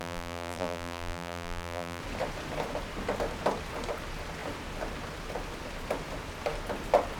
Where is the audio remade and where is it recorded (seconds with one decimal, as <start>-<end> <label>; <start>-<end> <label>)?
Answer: 0.0-2.0 remade; 2.0-7.2 recorded